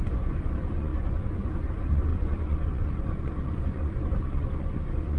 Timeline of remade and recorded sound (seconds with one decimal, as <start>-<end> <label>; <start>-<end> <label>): 0.0-5.2 remade